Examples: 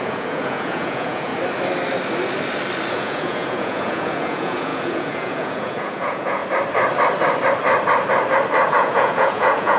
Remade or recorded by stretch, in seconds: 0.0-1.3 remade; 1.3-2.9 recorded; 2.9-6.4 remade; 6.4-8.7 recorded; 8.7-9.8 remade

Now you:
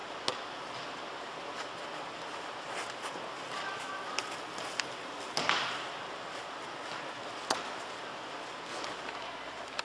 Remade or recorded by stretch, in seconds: 0.0-9.8 recorded

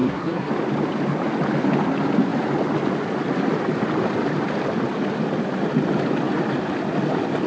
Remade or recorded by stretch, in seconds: 0.0-0.5 remade; 0.5-7.5 recorded

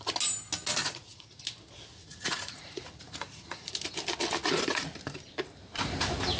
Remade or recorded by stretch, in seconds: 0.0-0.8 recorded; 0.8-1.4 remade; 1.4-2.0 recorded; 2.0-3.7 remade; 3.7-6.4 recorded

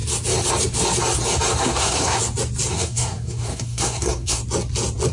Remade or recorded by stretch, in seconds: 0.0-1.6 recorded; 1.6-2.2 remade; 2.2-2.7 recorded; 2.7-4.4 remade; 4.4-5.1 recorded